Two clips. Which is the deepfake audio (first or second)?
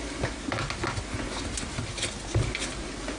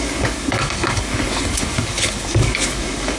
second